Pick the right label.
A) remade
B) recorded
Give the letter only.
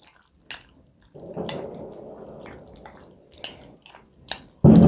B